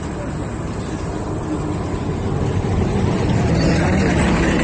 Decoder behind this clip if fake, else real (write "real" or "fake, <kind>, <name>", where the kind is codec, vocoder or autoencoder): real